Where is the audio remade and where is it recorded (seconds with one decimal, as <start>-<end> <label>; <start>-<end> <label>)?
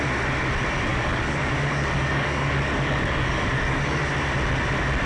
0.0-0.9 recorded; 0.9-4.0 remade; 4.0-5.1 recorded